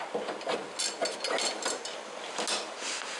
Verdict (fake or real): real